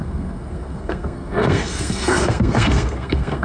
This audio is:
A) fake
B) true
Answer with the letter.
A